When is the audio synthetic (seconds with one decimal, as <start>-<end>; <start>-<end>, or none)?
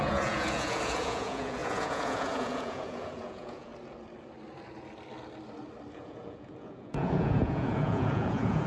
0.0-3.7; 5.9-8.7